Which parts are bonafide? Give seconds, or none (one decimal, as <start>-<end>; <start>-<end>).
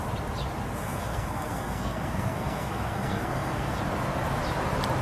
0.0-0.8; 3.8-5.0